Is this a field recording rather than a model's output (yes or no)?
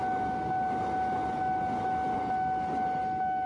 yes